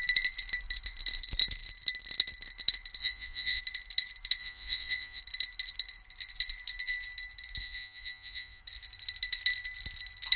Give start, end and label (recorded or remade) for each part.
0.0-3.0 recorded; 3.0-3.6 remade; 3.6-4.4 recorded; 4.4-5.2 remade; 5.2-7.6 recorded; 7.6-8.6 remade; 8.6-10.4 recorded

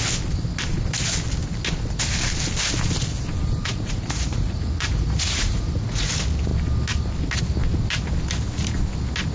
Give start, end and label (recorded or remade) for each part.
0.0-3.6 recorded; 3.6-6.1 remade; 6.1-9.3 recorded

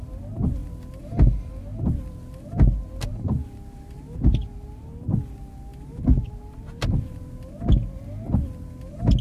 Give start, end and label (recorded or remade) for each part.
0.0-9.2 recorded

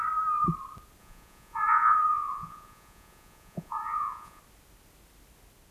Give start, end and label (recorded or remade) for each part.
0.0-1.0 recorded; 1.0-4.4 remade; 4.4-5.7 recorded

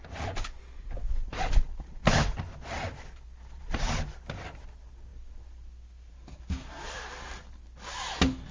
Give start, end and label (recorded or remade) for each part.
0.0-8.5 recorded

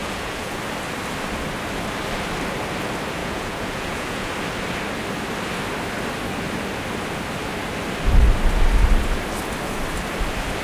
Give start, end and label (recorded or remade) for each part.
0.0-0.6 remade; 0.6-3.2 recorded; 3.2-4.3 remade; 4.3-10.6 recorded